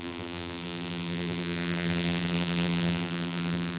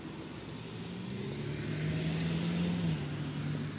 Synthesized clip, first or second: first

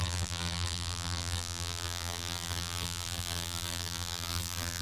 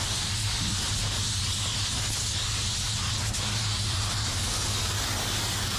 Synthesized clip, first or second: first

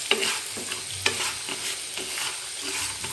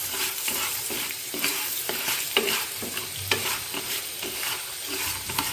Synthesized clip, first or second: second